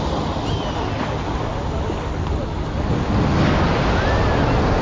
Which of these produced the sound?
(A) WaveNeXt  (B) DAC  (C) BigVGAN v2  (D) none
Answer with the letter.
D